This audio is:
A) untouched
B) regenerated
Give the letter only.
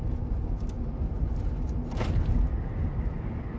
A